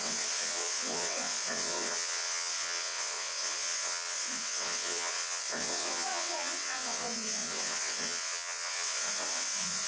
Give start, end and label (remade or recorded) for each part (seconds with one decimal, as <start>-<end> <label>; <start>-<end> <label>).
0.0-9.9 remade

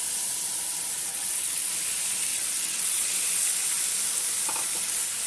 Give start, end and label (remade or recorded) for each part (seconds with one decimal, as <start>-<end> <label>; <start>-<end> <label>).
0.0-1.1 recorded; 1.1-1.7 remade; 1.7-2.3 recorded; 2.3-3.2 remade; 3.2-5.3 recorded